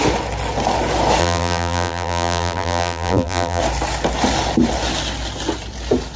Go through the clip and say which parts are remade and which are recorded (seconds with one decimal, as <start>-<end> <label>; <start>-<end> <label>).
0.0-1.2 recorded; 1.2-3.6 remade; 3.6-6.2 recorded